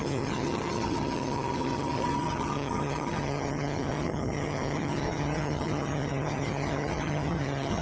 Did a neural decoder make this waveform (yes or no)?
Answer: yes